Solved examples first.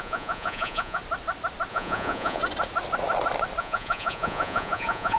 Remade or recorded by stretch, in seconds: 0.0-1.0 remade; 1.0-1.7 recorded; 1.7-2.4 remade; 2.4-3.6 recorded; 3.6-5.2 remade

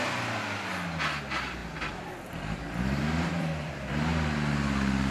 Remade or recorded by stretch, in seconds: 0.0-3.0 recorded; 3.0-4.1 remade; 4.1-5.1 recorded

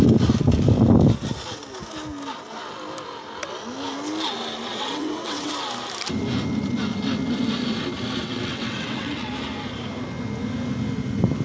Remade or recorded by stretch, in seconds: 0.0-4.7 recorded; 4.7-5.5 remade; 5.5-8.2 recorded; 8.2-9.3 remade; 9.3-11.4 recorded

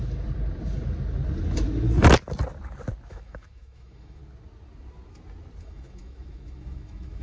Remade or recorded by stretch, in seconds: 0.0-3.1 recorded; 3.1-4.2 remade; 4.2-5.6 recorded; 5.6-7.2 remade

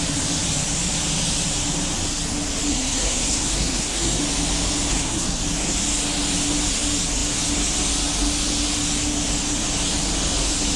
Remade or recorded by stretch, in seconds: 0.0-2.7 recorded; 2.7-4.2 remade; 4.2-4.9 recorded; 4.9-5.4 remade; 5.4-10.8 recorded

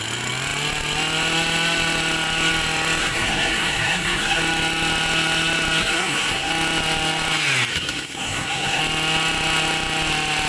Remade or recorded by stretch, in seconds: 0.0-3.0 recorded; 3.0-4.4 remade; 4.4-5.8 recorded; 5.8-6.5 remade; 6.5-7.7 recorded; 7.7-8.8 remade; 8.8-10.5 recorded